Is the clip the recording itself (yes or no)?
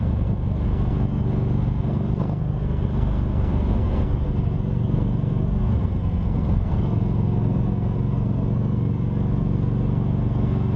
no